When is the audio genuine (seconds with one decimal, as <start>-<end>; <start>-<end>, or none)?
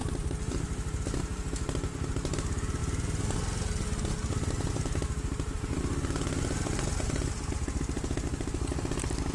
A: 1.0-9.3